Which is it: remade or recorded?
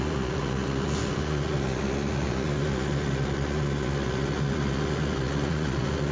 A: remade